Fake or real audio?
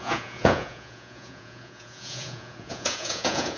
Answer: fake